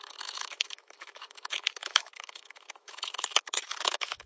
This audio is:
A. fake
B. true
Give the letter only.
A